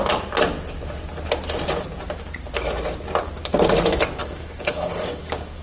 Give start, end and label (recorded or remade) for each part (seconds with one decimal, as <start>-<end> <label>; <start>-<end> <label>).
0.0-4.2 recorded; 4.2-5.6 remade